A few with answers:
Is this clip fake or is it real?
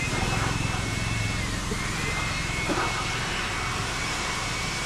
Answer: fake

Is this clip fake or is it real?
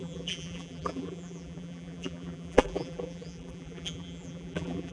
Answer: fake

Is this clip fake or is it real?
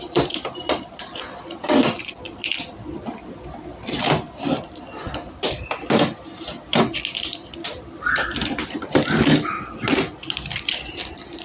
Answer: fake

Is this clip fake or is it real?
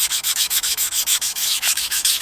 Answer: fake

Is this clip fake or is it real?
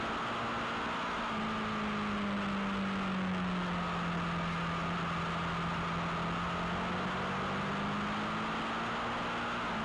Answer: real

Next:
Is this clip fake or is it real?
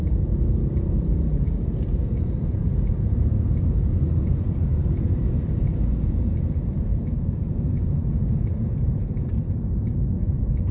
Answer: fake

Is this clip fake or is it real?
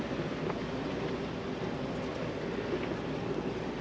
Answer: real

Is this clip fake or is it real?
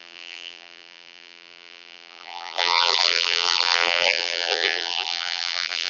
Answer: fake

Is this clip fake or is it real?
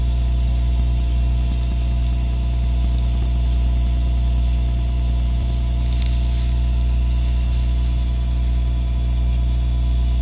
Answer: real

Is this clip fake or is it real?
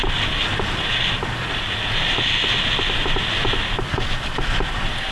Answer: real